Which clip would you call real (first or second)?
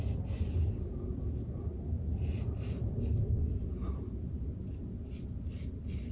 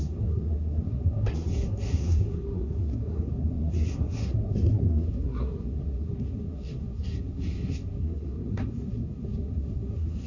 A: first